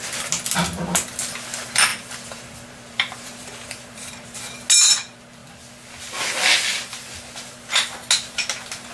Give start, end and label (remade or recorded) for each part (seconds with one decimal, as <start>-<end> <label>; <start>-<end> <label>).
0.0-1.9 recorded; 1.9-4.4 remade; 4.4-8.9 recorded